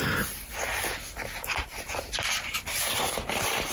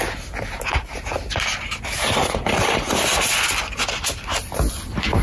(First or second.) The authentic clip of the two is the second